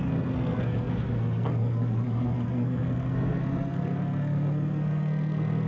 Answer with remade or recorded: remade